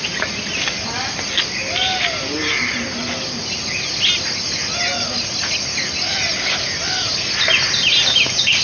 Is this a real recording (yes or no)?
yes